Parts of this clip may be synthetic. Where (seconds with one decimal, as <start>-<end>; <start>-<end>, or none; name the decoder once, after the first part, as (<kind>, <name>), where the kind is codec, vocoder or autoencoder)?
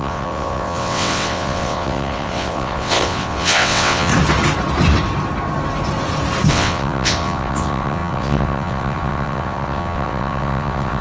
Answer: 0.0-4.1 (vocoder, WaveNeXt); 6.5-11.0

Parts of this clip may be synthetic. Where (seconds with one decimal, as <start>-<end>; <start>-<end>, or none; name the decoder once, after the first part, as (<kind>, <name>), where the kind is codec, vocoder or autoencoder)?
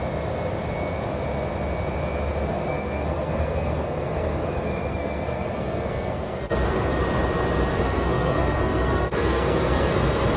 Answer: 2.5-7.0 (codec, SNAC); 7.7-9.9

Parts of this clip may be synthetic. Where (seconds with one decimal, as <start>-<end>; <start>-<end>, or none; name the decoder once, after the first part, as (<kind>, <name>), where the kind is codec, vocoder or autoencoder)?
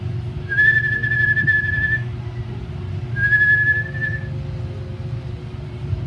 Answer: none